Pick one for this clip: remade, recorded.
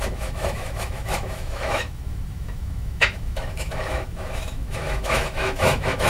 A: remade